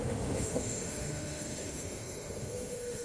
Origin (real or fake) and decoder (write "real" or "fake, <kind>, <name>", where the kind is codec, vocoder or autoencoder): fake, autoencoder, DAC-VAE